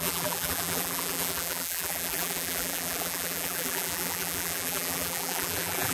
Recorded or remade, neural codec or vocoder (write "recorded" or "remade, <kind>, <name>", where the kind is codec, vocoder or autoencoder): remade, vocoder, BigVGAN v2